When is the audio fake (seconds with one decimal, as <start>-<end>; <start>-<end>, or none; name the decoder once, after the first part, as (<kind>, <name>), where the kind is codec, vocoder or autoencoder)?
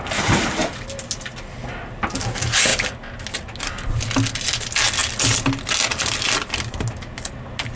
none